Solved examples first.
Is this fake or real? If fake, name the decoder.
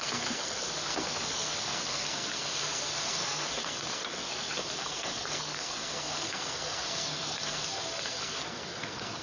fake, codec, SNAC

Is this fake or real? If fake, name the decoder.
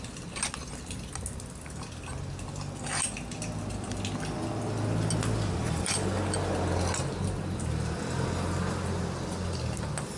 real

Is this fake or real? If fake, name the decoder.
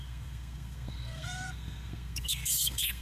fake, codec, SNAC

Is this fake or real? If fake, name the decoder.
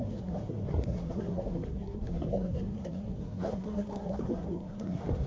fake, codec, SNAC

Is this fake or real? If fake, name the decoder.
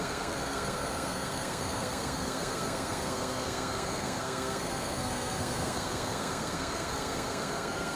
fake, codec, SNAC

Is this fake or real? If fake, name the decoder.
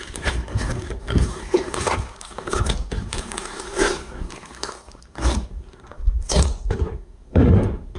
fake, codec, SNAC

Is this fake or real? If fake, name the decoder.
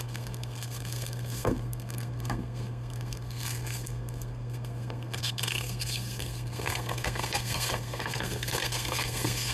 fake, codec, SNAC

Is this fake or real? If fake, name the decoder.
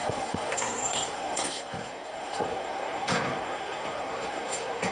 fake, codec, SNAC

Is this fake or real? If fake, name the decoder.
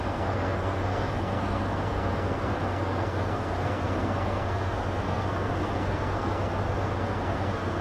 fake, codec, SNAC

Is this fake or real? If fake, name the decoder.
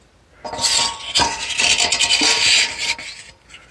real